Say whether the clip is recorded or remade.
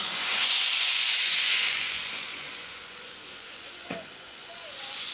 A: remade